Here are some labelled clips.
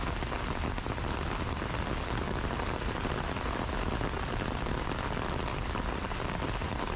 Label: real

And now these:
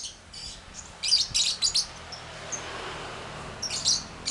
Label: real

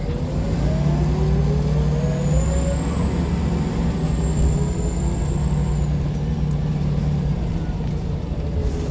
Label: real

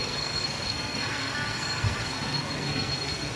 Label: fake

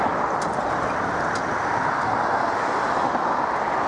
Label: real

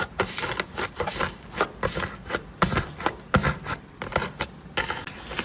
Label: real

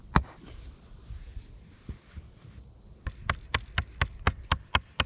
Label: real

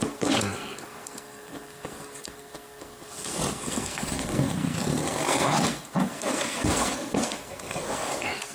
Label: fake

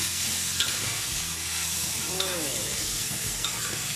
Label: fake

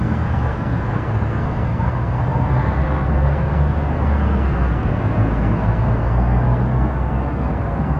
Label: fake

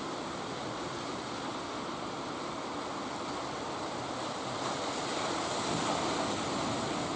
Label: real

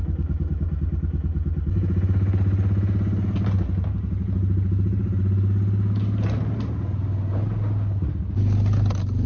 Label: real